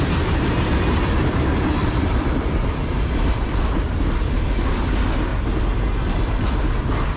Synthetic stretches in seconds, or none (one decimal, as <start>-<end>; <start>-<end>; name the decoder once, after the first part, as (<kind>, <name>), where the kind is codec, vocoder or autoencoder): 1.8-4.5 (vocoder, BigVGAN v2)